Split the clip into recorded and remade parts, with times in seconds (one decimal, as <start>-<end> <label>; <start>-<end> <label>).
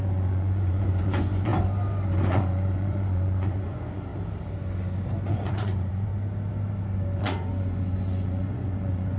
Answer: 0.0-1.5 remade; 1.5-2.2 recorded; 2.2-4.1 remade; 4.1-5.3 recorded; 5.3-6.1 remade; 6.1-7.2 recorded; 7.2-9.2 remade